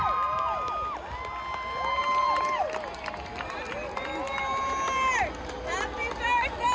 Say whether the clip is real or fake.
real